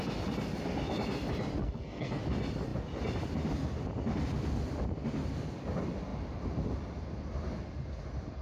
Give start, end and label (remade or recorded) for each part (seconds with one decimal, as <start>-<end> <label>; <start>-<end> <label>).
0.0-1.6 recorded; 1.6-2.2 remade; 2.2-8.4 recorded